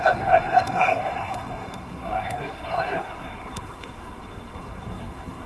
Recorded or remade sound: remade